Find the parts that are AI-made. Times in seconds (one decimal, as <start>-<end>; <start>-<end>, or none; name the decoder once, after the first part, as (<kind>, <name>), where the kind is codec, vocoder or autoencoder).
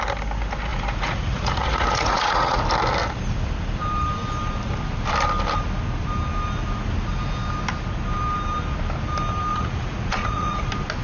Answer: 0.7-2.6 (vocoder, Vocos); 9.5-10.6